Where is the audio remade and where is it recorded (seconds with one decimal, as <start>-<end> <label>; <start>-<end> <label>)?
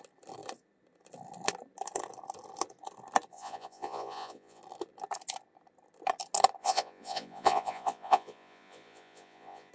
0.0-3.3 recorded; 3.3-4.6 remade; 4.6-6.6 recorded; 6.6-9.7 remade